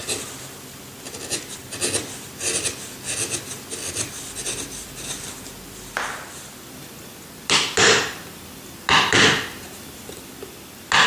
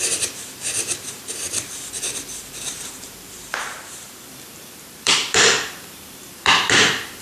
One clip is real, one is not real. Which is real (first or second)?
first